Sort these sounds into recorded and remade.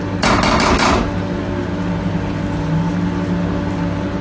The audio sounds recorded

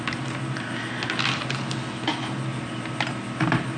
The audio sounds recorded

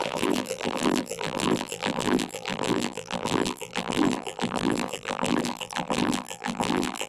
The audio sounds remade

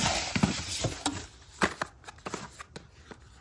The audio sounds recorded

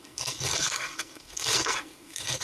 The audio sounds remade